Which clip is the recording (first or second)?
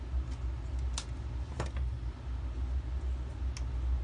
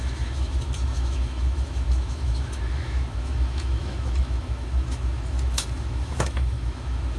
first